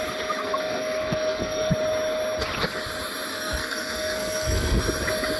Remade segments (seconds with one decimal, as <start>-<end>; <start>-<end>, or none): 0.4-1.7; 3.3-4.8